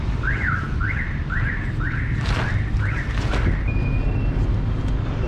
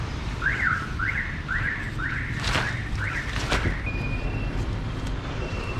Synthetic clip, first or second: second